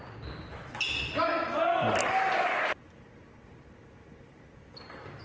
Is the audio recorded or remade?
recorded